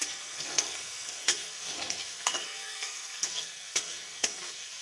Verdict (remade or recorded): remade